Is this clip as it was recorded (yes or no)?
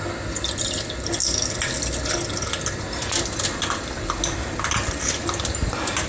yes